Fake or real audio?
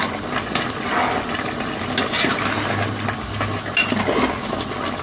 real